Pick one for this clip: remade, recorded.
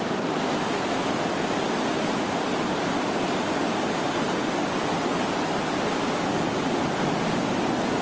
recorded